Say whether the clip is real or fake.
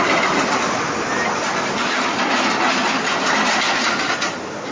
real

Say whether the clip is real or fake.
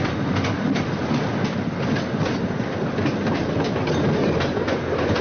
real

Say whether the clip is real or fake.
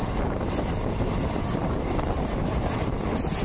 real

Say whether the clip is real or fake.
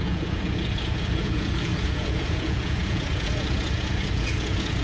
fake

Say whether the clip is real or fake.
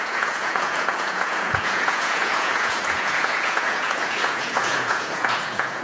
fake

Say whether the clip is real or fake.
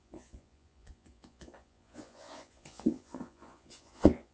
fake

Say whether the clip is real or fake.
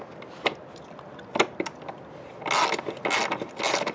real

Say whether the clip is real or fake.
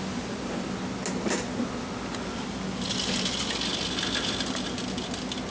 real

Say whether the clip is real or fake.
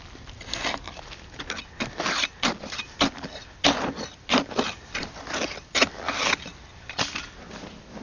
real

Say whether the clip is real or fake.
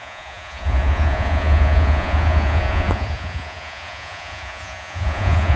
fake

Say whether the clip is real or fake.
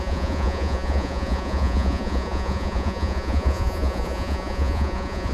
fake